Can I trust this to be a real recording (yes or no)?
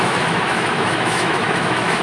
no